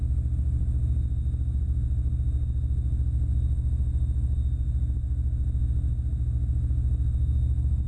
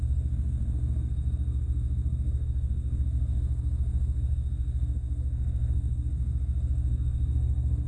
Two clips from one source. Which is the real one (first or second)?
first